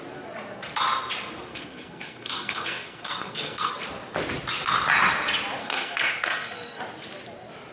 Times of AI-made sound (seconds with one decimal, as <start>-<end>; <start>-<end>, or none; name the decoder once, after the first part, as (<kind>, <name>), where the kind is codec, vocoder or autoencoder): 1.5-3.7 (codec, SNAC); 5.6-6.8